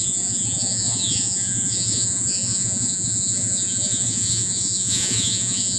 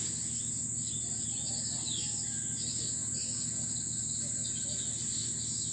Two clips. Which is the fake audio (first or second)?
first